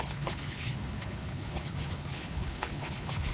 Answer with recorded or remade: remade